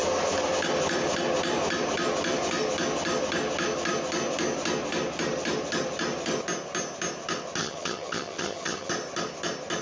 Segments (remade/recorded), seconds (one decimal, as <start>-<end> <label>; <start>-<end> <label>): 0.0-7.6 recorded; 7.6-8.9 remade; 8.9-9.8 recorded